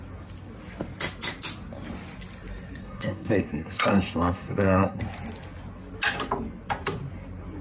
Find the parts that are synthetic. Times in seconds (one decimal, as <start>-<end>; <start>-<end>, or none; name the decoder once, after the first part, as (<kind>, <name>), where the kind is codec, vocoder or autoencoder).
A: 2.8-5.0 (codec, SNAC)